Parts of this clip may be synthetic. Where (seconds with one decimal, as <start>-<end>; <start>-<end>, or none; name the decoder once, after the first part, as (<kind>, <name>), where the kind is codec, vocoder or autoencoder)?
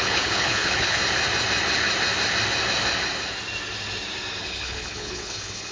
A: 0.0-1.0 (codec, HILCodec); 4.4-5.7